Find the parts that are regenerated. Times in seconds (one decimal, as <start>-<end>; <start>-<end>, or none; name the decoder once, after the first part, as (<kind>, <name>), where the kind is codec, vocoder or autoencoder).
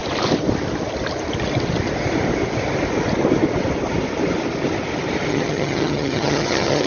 5.3-6.9 (vocoder, HiFi-GAN)